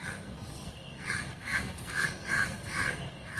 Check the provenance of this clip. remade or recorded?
remade